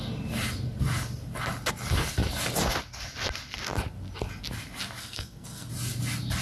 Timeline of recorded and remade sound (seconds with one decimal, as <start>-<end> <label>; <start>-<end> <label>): 0.0-5.0 recorded; 5.0-5.7 remade; 5.7-6.4 recorded